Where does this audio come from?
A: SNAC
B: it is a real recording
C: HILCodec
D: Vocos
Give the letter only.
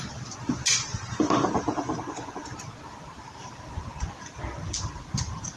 B